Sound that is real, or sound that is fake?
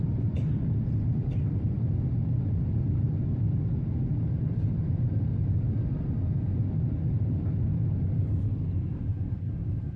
real